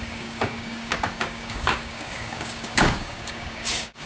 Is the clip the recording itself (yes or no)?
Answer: no